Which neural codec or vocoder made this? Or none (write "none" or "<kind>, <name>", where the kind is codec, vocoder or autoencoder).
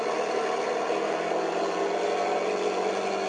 none